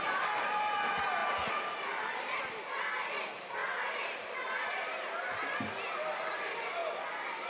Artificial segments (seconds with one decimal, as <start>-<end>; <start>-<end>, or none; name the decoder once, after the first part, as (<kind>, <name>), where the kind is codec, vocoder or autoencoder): none